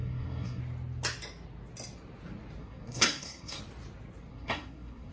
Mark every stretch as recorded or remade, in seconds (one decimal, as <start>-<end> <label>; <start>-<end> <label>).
0.0-0.6 remade; 0.6-2.6 recorded; 2.6-3.6 remade; 3.6-4.3 recorded; 4.3-5.1 remade